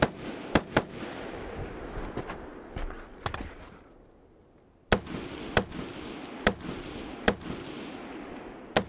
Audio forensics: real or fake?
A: real